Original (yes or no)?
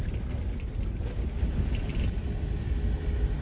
yes